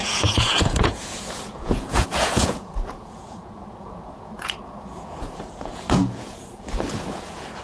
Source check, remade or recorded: remade